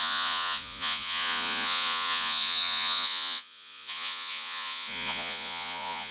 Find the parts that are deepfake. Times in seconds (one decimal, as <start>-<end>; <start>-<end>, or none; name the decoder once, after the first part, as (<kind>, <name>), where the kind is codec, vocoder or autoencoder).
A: 0.0-6.1 (vocoder, Vocos)